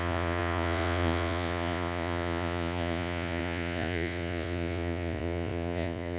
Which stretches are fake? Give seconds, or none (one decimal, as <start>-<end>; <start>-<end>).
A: 0.0-6.2